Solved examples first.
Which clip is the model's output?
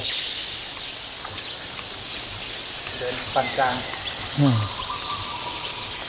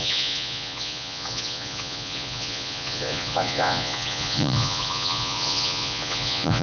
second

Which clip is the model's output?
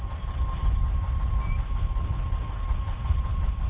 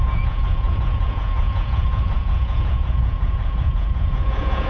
second